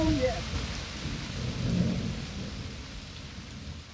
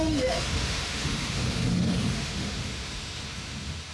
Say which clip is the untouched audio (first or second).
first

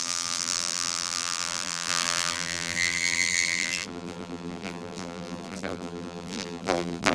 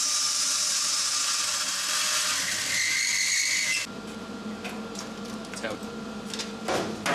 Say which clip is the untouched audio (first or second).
second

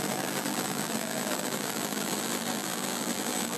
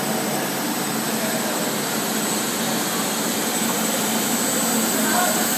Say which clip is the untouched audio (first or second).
second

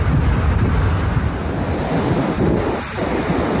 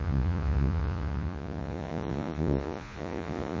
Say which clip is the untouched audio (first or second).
first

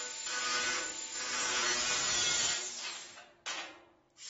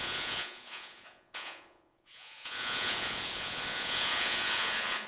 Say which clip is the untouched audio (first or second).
first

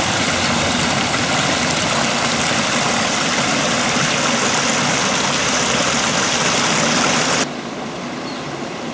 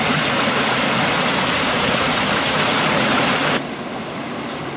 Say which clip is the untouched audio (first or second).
first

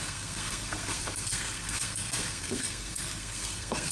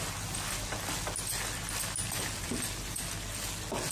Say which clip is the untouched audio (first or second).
second